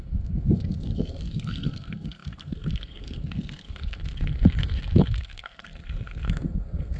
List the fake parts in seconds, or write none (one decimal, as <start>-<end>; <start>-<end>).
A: 0.0-7.0